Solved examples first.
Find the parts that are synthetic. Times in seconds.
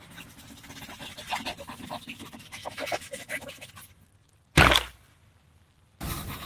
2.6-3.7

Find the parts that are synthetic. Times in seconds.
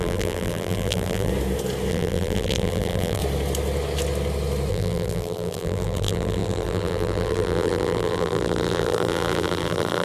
0.0-1.3; 1.9-3.2; 4.7-10.0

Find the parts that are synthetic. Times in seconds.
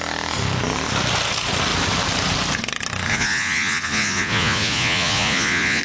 3.1-5.8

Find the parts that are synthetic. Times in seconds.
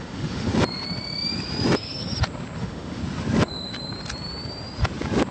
0.0-0.5; 2.6-3.0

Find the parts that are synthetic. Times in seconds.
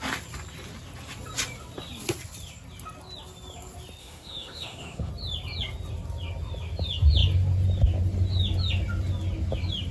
4.0-5.1